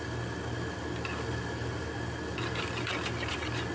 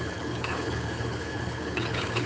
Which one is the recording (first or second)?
first